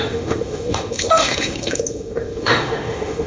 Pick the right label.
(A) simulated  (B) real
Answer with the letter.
A